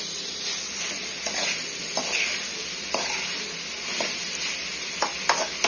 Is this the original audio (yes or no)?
yes